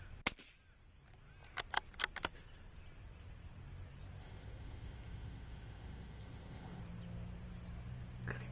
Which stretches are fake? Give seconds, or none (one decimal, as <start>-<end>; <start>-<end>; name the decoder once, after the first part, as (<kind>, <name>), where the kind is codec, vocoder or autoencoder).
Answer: 4.2-6.8 (codec, ZipCodec)

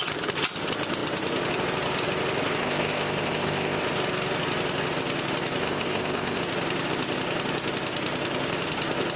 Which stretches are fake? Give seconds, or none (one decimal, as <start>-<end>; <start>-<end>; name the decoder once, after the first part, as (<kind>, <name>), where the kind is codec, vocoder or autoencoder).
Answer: 2.6-3.8 (codec, ZipCodec); 5.6-6.4

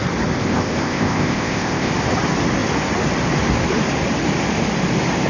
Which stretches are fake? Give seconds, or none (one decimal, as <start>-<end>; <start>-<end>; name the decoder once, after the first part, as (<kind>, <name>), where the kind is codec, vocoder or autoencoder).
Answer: 0.4-1.9 (codec, ZipCodec)

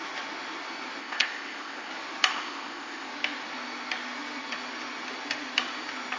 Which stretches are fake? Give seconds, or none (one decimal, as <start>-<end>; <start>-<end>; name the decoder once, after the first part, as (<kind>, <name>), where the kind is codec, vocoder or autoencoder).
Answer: 1.0-1.9 (codec, ZipCodec); 2.3-3.1

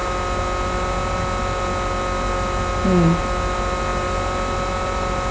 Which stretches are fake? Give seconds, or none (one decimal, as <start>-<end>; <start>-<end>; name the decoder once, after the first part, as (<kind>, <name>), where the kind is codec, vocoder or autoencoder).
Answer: none

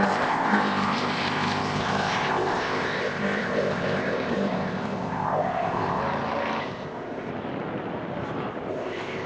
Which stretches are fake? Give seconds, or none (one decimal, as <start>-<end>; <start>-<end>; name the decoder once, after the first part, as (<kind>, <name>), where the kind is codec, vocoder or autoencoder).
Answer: 0.0-6.0 (codec, ZipCodec); 6.6-7.3; 8.7-9.3

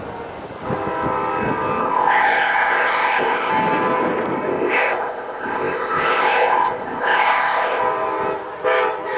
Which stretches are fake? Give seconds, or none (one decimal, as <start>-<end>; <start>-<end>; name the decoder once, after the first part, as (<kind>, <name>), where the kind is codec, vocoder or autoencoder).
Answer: 1.8-3.5 (codec, ZipCodec); 4.5-7.8